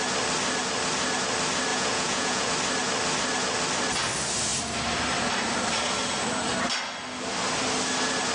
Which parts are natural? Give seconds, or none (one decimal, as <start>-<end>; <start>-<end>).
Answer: 0.0-1.7; 2.5-8.3